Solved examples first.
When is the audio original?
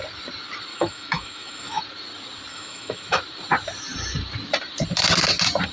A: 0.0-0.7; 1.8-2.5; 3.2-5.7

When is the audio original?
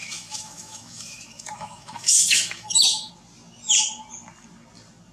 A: 3.1-5.1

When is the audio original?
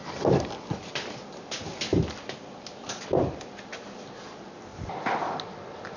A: 0.7-4.7; 5.5-6.0